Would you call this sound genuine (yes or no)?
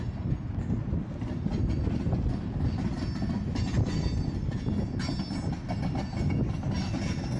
yes